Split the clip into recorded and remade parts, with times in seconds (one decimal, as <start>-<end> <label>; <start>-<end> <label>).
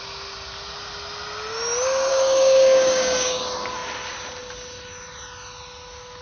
0.0-2.1 recorded; 2.1-3.4 remade; 3.4-6.2 recorded